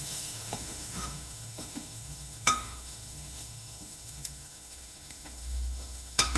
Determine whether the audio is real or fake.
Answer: fake